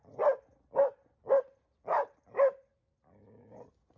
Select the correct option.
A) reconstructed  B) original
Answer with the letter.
B